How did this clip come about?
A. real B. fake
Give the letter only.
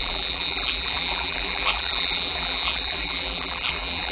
B